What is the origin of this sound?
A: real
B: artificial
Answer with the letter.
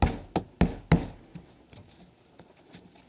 A